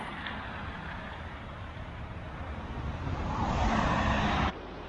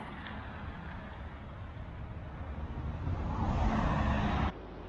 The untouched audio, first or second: second